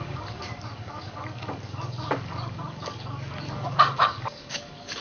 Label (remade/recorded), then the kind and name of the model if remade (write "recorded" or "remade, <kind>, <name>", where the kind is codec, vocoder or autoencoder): remade, codec, DAC